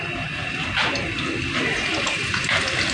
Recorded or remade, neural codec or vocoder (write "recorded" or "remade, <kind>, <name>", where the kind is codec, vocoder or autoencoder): recorded